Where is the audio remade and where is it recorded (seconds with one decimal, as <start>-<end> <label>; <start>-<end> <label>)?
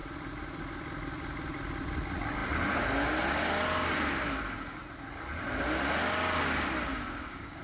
0.0-6.9 recorded; 6.9-7.6 remade